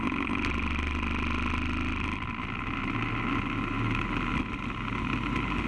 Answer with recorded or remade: recorded